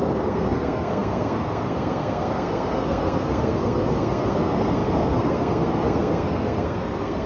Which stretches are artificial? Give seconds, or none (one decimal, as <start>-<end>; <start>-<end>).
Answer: 0.0-7.3